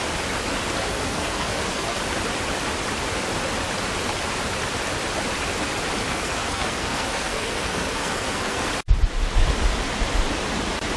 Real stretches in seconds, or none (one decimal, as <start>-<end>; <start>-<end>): 0.0-0.9; 2.0-6.1; 8.7-11.0